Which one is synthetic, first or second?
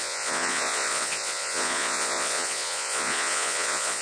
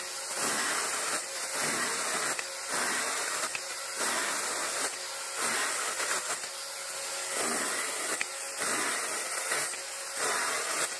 first